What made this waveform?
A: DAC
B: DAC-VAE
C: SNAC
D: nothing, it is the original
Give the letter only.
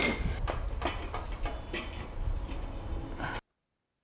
D